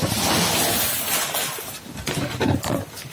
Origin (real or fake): real